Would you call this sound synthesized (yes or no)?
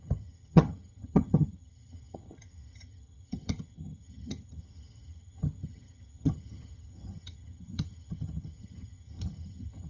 yes